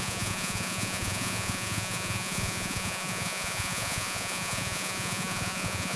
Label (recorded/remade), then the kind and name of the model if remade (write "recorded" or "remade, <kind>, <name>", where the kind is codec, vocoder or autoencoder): remade, vocoder, Vocos